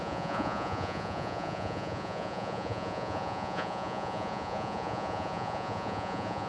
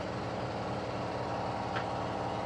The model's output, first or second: first